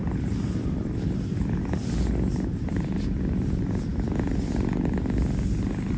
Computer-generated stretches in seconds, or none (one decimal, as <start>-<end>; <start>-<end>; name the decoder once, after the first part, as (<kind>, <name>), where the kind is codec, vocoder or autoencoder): none